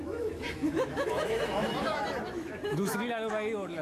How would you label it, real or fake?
fake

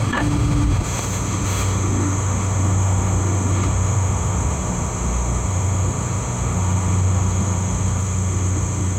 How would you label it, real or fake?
fake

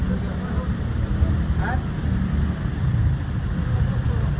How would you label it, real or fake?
real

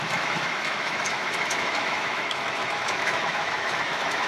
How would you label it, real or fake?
fake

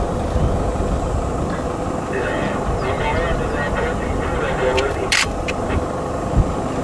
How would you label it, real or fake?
real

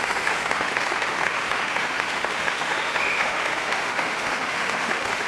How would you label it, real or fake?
fake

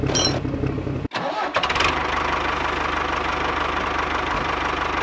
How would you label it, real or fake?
real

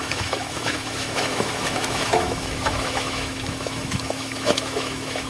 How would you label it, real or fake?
fake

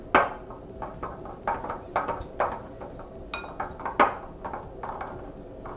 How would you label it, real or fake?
real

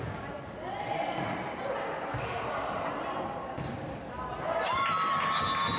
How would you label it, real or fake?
real